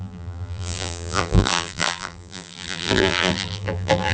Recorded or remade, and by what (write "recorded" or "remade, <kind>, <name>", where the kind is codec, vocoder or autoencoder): remade, vocoder, BigVGAN v2